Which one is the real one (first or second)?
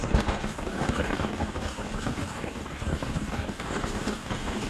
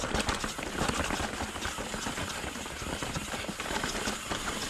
second